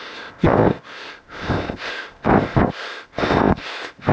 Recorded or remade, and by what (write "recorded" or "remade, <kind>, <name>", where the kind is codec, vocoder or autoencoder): remade, codec, ZipCodec